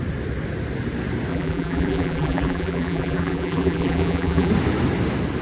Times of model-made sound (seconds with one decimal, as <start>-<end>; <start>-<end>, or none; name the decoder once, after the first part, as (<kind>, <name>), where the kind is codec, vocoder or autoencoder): 1.3-4.5 (vocoder, BigVGAN v2)